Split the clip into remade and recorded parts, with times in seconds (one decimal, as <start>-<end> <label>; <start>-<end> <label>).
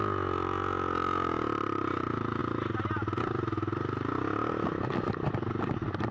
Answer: 0.0-6.1 recorded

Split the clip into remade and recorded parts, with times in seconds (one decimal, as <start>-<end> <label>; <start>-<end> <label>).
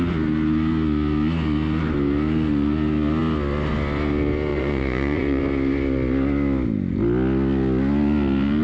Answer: 0.0-4.5 recorded; 4.5-5.4 remade; 5.4-8.6 recorded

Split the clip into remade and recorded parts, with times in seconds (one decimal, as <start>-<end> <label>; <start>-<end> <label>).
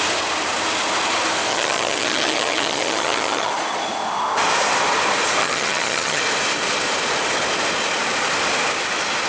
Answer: 0.0-1.5 recorded; 1.5-3.5 remade; 3.5-5.4 recorded; 5.4-6.2 remade; 6.2-9.3 recorded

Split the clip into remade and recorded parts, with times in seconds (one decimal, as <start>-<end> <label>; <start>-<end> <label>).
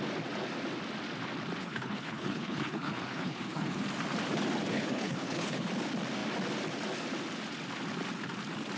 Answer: 0.0-1.6 recorded; 1.6-3.8 remade; 3.8-4.7 recorded; 4.7-5.7 remade; 5.7-8.8 recorded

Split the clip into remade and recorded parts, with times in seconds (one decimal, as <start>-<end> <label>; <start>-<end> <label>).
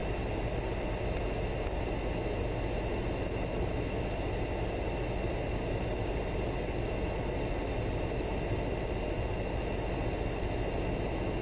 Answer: 0.0-11.4 recorded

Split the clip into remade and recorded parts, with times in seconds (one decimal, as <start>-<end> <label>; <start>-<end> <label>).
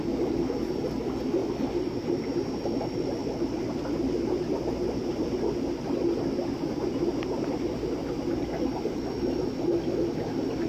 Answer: 0.0-10.7 recorded